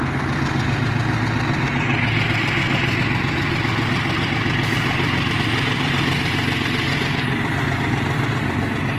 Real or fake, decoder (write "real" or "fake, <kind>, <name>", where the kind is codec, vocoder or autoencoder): real